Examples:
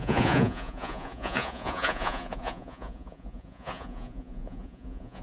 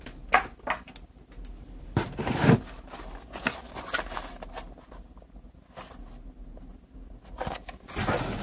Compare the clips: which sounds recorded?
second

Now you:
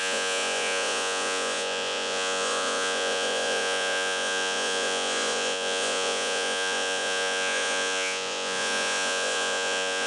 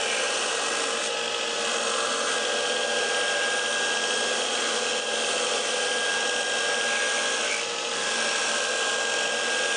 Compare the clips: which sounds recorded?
second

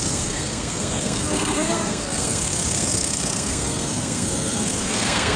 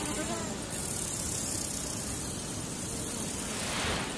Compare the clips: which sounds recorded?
second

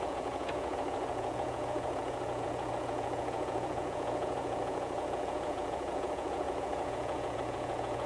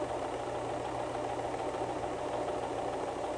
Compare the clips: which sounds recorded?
second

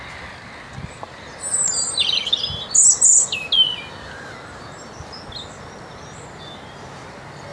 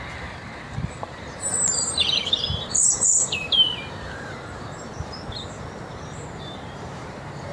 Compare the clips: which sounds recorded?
first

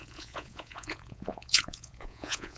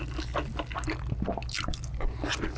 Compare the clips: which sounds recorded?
second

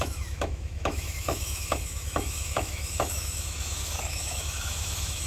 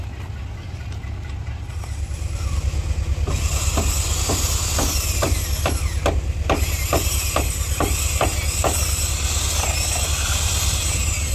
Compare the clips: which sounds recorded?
second